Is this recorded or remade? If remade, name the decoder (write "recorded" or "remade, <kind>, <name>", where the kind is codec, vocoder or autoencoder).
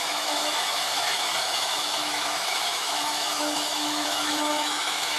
remade, autoencoder, DAC-VAE